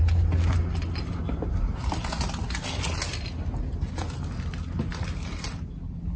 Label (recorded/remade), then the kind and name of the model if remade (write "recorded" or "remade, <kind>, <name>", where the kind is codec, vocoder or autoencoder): recorded